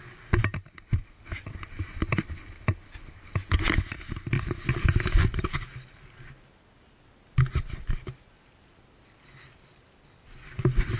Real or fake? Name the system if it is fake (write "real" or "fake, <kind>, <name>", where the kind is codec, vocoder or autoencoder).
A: real